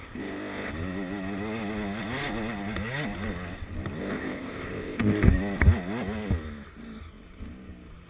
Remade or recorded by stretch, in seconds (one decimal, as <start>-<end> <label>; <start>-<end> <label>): 0.0-0.7 remade; 0.7-4.0 recorded; 4.0-5.3 remade; 5.3-8.1 recorded